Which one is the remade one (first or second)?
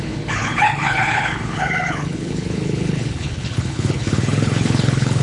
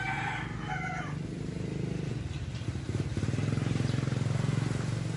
first